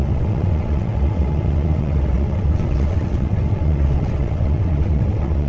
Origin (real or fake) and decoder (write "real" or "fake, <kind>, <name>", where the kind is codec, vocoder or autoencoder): fake, vocoder, WaveNeXt